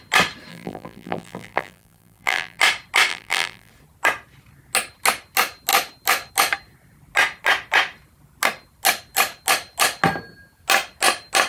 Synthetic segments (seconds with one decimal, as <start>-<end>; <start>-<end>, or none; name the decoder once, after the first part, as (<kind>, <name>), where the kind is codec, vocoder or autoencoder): 0.5-2.6 (vocoder, BigVGAN v2); 3.1-3.7